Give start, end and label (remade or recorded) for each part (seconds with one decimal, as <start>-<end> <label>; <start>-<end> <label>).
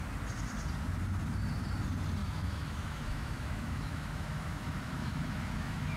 0.0-2.2 recorded; 2.2-6.0 remade